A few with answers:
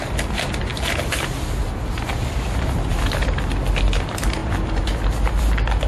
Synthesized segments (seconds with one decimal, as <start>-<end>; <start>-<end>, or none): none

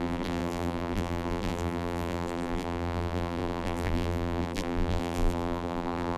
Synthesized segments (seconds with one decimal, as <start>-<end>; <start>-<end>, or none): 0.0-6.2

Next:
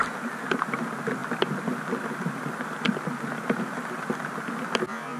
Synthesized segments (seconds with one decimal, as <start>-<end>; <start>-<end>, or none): none

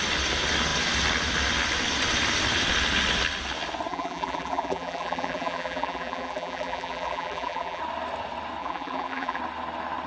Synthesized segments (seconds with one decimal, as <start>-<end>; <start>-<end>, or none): 3.9-7.8; 8.6-9.4

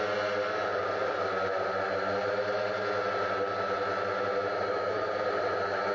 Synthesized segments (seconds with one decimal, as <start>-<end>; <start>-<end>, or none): none

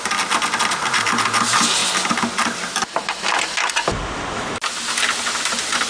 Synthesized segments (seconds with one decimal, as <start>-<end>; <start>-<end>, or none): none

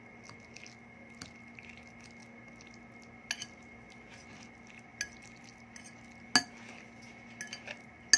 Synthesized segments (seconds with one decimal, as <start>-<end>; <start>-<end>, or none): none